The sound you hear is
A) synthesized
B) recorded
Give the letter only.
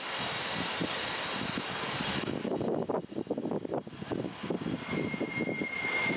B